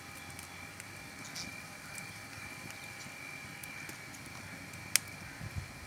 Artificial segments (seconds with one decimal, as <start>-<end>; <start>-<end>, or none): 1.5-2.7